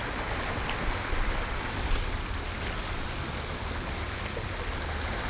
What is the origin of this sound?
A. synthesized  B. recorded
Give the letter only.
B